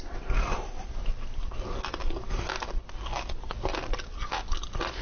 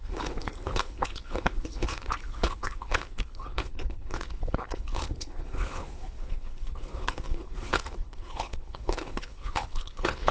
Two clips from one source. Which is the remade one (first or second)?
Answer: second